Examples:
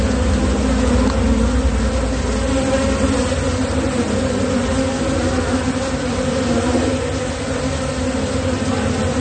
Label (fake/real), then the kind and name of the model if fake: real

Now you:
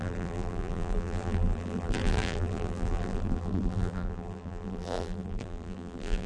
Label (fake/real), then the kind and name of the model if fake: fake, vocoder, BigVGAN v2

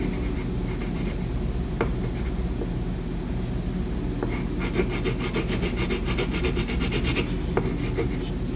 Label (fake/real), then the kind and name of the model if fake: real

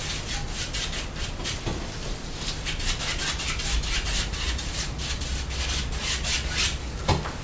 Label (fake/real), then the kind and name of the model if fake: real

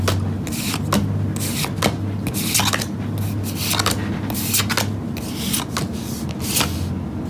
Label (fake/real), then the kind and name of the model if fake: real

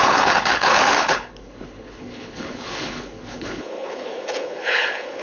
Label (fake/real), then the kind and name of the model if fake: fake, codec, HILCodec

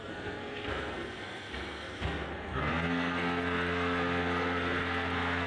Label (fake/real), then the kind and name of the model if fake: fake, codec, SNAC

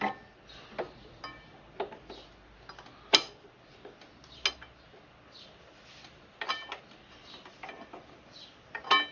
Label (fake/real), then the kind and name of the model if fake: real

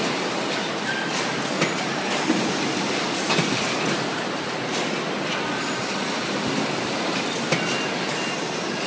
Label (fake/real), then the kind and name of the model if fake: real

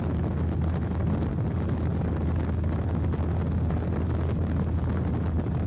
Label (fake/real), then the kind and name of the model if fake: real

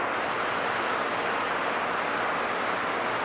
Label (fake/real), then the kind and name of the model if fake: real